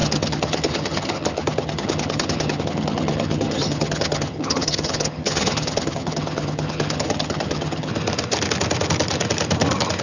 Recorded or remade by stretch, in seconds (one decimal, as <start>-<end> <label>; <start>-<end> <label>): 0.0-7.9 remade; 7.9-10.0 recorded